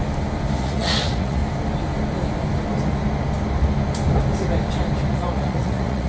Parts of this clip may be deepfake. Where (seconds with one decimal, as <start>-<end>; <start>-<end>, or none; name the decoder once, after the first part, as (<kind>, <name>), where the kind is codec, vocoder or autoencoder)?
0.6-1.4 (vocoder, Vocos); 5.1-6.1